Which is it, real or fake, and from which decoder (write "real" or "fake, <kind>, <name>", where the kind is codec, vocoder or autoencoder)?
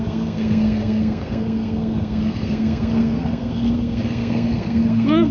fake, codec, SNAC